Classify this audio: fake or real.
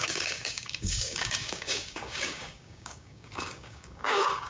fake